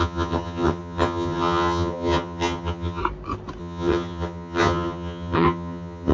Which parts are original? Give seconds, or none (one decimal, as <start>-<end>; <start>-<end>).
3.0-3.6